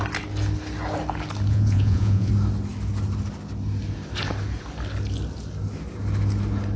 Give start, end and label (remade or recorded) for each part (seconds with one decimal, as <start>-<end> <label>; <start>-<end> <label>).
0.0-1.5 recorded; 1.5-2.3 remade; 2.3-6.8 recorded